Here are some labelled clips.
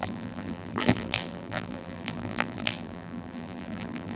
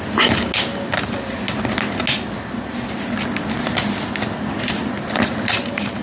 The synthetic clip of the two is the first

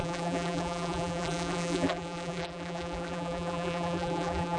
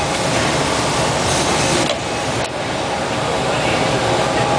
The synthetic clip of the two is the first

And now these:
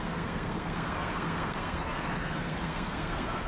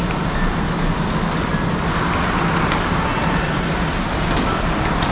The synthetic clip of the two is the first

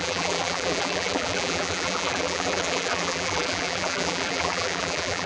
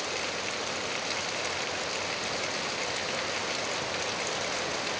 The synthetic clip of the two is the first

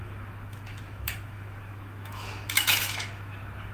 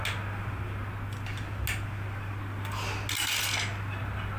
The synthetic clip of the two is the first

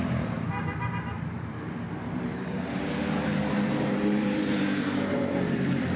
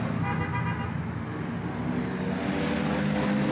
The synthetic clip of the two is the first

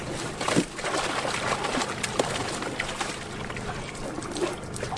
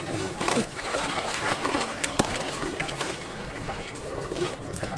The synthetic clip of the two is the second